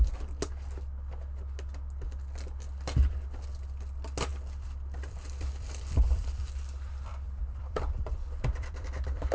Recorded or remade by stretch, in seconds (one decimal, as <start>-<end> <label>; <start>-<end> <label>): 0.0-4.3 recorded; 4.3-9.3 remade